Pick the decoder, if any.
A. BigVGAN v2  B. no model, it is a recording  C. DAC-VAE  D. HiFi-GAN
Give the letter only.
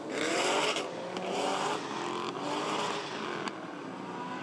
B